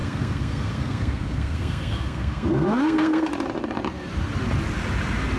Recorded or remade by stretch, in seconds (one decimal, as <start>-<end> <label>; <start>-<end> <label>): 0.0-3.3 remade; 3.3-5.4 recorded